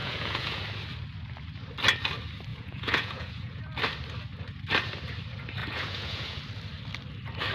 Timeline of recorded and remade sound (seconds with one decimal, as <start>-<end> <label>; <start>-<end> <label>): 0.0-0.6 remade; 0.6-2.5 recorded; 2.5-3.6 remade; 3.6-5.6 recorded; 5.6-6.4 remade; 6.4-7.5 recorded